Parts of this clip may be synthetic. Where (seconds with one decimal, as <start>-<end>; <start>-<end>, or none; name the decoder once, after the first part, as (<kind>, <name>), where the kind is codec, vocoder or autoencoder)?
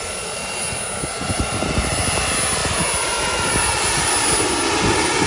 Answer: none